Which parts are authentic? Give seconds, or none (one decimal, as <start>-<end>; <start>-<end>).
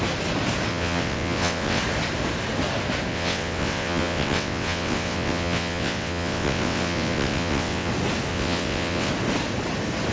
0.0-0.7; 1.8-3.1; 7.9-8.3; 9.1-10.1